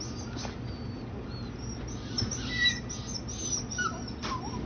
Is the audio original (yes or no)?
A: yes